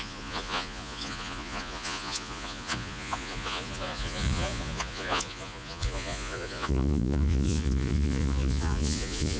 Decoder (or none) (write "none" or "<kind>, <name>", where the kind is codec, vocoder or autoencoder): vocoder, Vocos